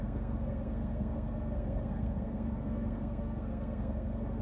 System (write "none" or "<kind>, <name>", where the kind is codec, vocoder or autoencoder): codec, SNAC